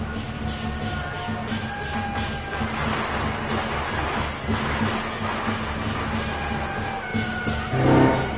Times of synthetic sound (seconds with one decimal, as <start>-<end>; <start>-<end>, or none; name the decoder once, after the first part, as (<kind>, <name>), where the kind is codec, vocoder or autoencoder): none

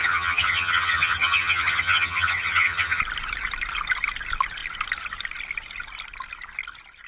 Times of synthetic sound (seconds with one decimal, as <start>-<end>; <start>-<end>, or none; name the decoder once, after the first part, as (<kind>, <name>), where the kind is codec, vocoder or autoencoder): 0.0-3.0 (vocoder, HiFi-GAN)

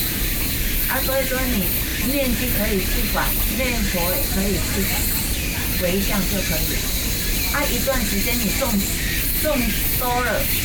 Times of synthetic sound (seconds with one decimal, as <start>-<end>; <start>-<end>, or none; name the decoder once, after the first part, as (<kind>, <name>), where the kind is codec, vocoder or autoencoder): none

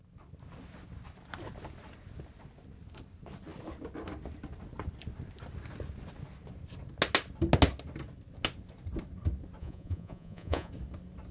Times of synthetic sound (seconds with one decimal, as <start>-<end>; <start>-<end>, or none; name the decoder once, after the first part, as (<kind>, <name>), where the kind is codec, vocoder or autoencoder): 9.6-10.7 (vocoder, Vocos)

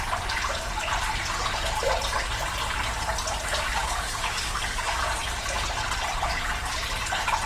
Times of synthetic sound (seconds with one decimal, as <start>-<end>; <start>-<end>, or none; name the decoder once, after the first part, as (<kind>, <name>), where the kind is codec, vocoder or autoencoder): 3.8-5.0 (codec, DAC)